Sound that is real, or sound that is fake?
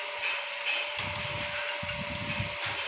real